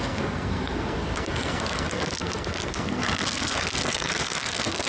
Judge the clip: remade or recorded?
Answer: remade